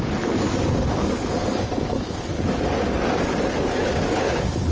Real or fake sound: fake